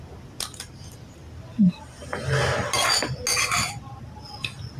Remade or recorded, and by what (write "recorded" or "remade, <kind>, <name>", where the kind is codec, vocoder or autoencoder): recorded